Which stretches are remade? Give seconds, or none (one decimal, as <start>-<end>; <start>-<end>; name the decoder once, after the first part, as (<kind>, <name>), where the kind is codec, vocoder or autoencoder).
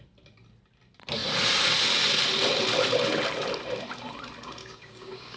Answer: 4.6-5.4 (codec, DAC)